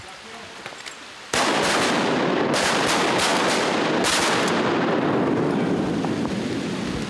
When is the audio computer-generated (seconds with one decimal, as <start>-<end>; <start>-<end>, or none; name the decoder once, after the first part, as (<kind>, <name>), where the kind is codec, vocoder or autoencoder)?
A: none